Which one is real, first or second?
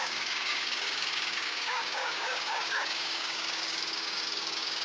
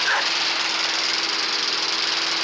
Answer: second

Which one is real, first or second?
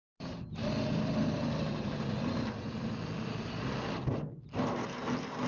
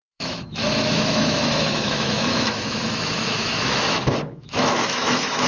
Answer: first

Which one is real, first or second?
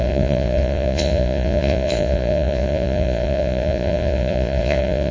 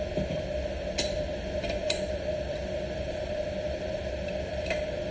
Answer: second